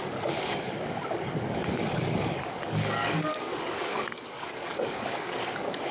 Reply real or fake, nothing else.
fake